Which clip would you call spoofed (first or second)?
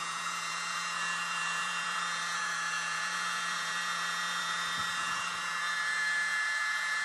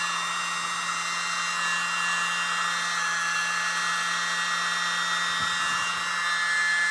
first